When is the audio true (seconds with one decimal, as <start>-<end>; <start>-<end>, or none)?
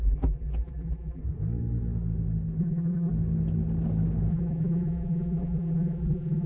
1.2-2.6; 3.1-4.3